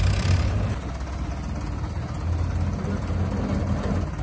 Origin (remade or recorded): recorded